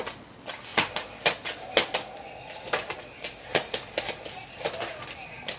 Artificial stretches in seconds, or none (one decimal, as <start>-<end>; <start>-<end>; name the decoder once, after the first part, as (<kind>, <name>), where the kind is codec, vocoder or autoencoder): none

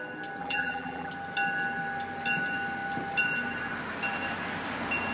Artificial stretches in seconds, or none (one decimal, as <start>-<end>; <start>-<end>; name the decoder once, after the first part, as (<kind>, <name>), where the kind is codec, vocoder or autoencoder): 0.4-1.1 (vocoder, BigVGAN v2)